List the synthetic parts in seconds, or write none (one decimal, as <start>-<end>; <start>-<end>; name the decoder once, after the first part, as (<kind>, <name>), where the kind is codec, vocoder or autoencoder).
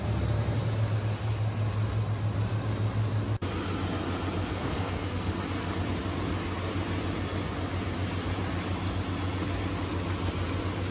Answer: 4.4-5.3 (codec, SNAC)